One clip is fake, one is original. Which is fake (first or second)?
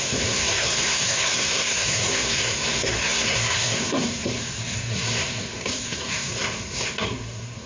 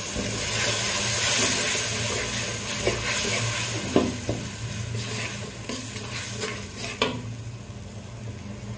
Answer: first